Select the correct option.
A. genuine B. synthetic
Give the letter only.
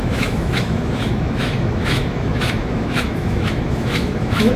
B